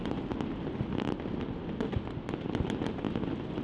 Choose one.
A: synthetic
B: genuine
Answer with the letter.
B